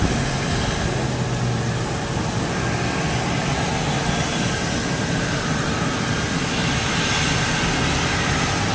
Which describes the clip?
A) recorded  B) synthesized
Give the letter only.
A